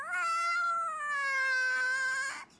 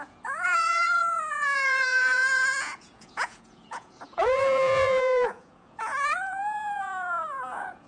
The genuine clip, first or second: first